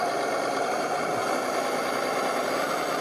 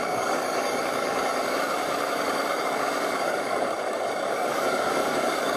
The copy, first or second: second